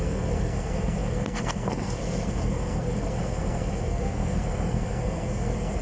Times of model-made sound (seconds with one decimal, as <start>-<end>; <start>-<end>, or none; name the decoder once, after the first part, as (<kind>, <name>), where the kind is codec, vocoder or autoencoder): 0.0-5.8 (codec, SNAC)